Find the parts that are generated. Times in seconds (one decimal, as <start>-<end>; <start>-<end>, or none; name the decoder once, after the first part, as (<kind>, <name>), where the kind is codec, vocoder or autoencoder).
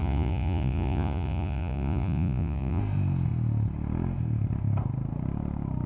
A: 0.0-2.8 (vocoder, Vocos)